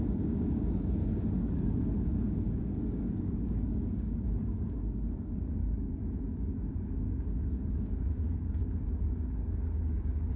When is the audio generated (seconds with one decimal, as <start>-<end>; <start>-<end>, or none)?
0.0-6.0; 6.7-10.4